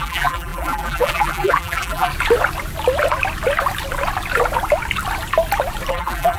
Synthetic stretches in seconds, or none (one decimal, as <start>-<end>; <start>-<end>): 0.0-2.1; 5.9-6.4